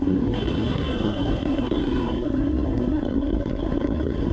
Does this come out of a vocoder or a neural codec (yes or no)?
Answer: yes